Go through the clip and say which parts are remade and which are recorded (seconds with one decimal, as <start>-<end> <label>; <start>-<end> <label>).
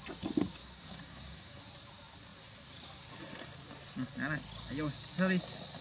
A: 0.0-0.6 recorded; 0.6-1.6 remade; 1.6-5.8 recorded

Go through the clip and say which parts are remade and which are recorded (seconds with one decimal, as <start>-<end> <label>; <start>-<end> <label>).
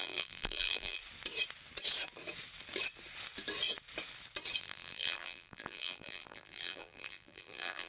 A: 0.0-1.0 remade; 1.0-4.6 recorded; 4.6-7.9 remade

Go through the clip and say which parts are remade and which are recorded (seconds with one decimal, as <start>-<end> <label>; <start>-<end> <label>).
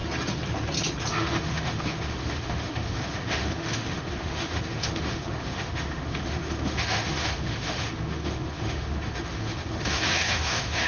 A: 0.0-1.1 recorded; 1.1-10.9 remade